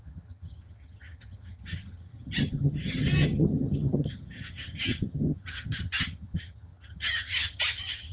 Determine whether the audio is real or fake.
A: fake